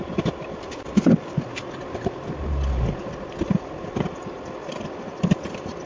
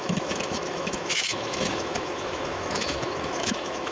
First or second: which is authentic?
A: first